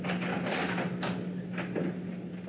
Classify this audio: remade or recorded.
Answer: recorded